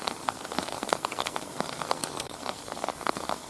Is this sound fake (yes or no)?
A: yes